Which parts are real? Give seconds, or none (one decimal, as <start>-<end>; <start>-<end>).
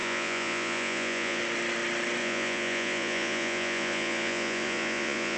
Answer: 1.4-2.2